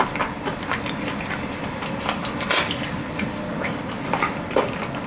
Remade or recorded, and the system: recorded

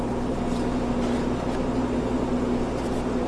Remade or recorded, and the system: recorded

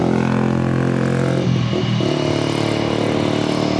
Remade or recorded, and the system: recorded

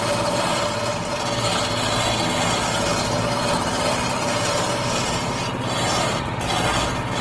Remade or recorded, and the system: recorded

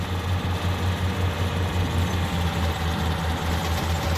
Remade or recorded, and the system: recorded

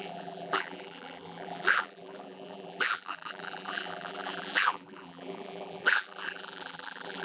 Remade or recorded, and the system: remade, vocoder, BigVGAN v2